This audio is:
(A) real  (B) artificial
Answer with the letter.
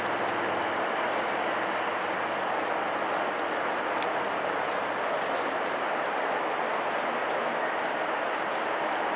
A